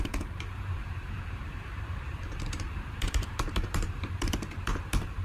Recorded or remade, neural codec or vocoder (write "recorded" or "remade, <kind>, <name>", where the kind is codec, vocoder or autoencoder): remade, vocoder, BigVGAN v2